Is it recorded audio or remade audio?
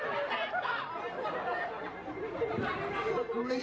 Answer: recorded